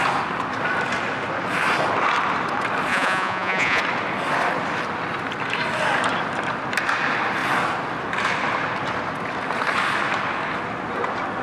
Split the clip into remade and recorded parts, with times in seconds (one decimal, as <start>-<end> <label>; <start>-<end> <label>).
0.0-2.9 recorded; 2.9-3.8 remade; 3.8-11.4 recorded